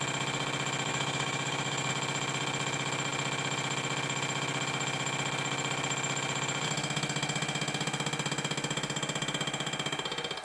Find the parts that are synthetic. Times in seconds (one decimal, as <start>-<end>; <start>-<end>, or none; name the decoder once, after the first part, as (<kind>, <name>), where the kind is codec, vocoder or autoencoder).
0.9-1.9 (autoencoder, DAC-VAE)